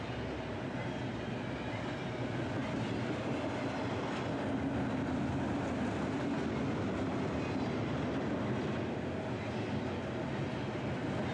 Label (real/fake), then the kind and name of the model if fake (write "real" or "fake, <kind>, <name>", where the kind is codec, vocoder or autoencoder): real